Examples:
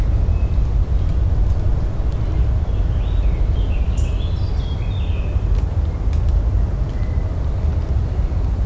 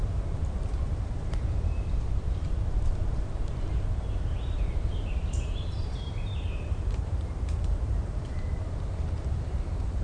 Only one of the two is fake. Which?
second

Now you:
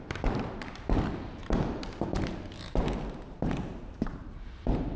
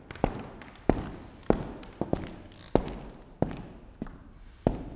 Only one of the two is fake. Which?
first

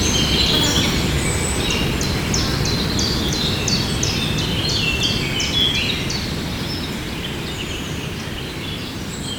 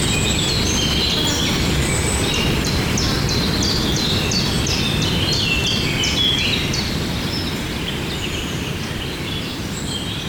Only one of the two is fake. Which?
second